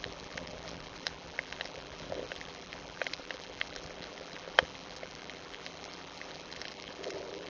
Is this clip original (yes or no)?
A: no